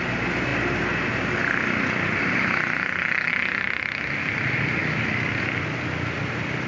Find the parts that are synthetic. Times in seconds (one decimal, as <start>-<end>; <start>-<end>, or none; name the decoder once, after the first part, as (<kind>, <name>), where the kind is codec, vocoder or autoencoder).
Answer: none